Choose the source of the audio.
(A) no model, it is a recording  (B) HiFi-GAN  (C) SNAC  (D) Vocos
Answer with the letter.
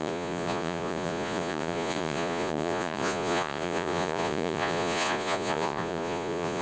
D